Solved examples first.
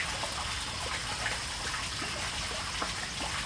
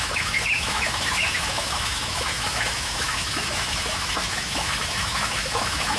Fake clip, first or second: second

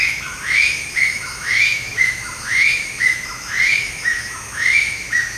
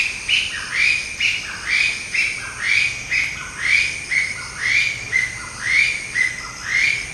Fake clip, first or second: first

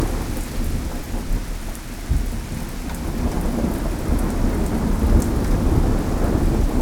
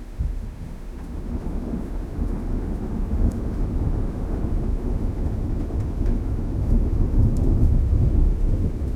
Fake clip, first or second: second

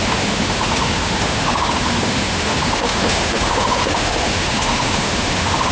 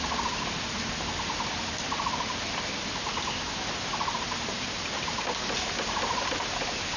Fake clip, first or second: first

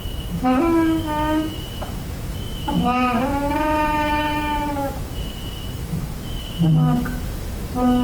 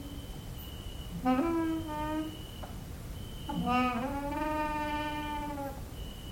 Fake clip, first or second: first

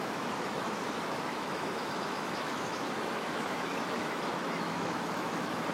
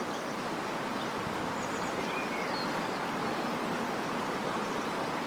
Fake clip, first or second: first